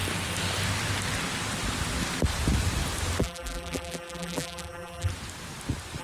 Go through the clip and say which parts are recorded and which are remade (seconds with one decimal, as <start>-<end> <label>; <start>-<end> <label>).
0.0-3.2 recorded; 3.2-5.1 remade; 5.1-6.0 recorded